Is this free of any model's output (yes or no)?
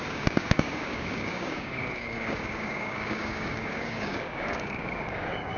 no